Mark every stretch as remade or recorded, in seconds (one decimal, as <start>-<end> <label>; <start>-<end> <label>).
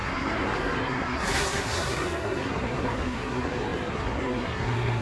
0.0-5.0 remade